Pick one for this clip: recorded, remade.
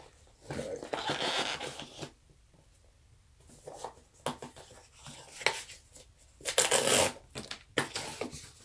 recorded